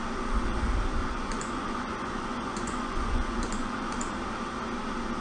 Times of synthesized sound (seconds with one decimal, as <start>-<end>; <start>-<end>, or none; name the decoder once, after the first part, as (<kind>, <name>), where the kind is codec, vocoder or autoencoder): 1.0-3.9 (vocoder, Vocos)

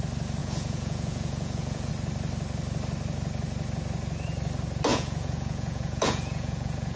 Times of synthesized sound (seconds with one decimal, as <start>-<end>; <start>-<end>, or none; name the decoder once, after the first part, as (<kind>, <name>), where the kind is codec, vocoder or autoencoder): 0.4-1.9 (vocoder, Vocos); 4.9-7.0

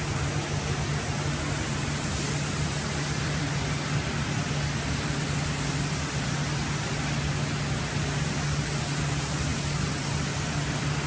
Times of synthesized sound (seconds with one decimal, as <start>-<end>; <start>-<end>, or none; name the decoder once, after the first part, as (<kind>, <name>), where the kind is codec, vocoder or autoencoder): none

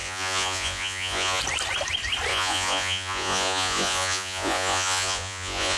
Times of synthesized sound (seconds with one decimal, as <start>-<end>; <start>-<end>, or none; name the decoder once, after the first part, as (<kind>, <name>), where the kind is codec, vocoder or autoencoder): 0.0-1.4 (vocoder, Vocos); 2.3-5.8

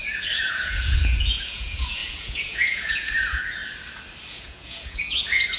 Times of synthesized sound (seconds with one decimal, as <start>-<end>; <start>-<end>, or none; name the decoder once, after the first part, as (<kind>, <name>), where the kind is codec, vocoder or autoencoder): 0.0-3.6 (vocoder, Vocos); 4.3-5.6

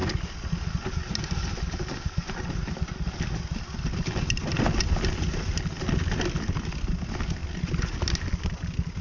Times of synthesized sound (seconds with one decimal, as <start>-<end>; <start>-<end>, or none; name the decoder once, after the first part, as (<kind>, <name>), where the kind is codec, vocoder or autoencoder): none